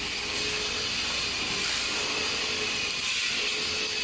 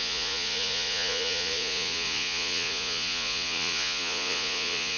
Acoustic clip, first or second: first